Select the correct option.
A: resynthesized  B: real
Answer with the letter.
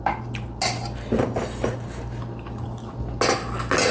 B